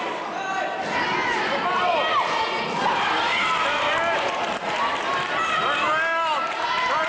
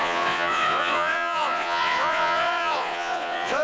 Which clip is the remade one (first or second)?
second